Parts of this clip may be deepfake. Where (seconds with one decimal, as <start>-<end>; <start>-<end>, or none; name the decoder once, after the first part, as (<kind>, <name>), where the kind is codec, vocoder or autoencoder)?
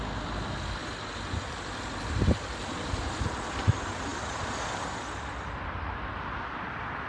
none